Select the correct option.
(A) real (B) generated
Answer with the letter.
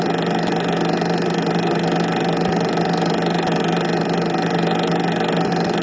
A